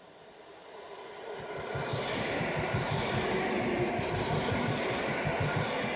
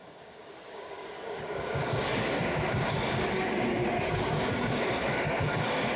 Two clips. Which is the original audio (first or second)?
first